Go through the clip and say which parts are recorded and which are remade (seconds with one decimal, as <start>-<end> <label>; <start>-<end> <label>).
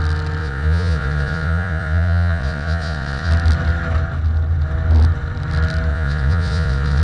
0.0-0.4 recorded; 0.4-3.3 remade; 3.3-5.9 recorded; 5.9-7.0 remade